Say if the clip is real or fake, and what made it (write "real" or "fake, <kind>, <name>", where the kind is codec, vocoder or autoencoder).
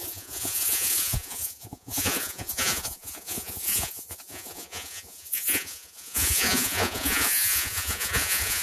fake, vocoder, Vocos